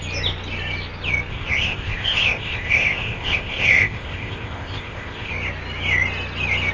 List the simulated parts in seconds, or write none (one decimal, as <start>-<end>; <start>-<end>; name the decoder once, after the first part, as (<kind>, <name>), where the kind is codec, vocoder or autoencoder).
1.3-5.3 (codec, ZipCodec)